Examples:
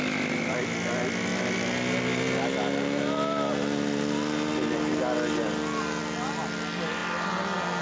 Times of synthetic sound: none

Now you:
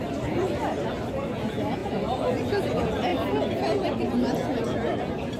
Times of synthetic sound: none